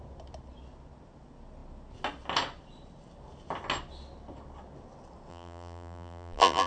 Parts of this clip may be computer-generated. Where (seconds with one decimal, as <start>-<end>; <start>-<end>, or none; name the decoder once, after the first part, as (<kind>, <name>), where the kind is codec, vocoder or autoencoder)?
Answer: 5.3-6.7 (vocoder, BigVGAN v2)